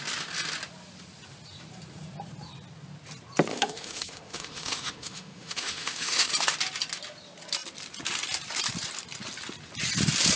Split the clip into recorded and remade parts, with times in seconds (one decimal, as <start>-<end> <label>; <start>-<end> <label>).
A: 0.0-3.5 recorded; 3.5-6.3 remade; 6.3-10.4 recorded